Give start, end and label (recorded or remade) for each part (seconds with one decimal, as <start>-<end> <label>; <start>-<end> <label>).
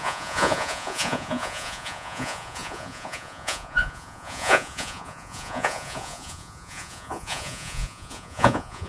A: 0.0-8.9 remade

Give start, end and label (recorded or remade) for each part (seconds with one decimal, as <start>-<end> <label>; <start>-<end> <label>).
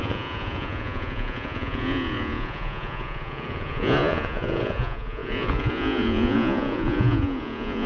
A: 0.0-7.9 remade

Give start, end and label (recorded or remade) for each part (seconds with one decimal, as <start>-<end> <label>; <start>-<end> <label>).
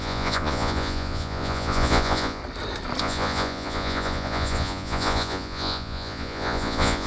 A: 0.0-2.4 remade; 2.4-3.0 recorded; 3.0-7.1 remade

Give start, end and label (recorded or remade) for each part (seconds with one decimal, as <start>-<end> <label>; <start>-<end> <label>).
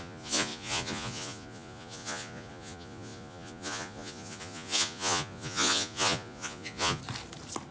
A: 0.0-7.0 remade; 7.0-7.7 recorded